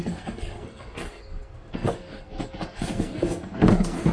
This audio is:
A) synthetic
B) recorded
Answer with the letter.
A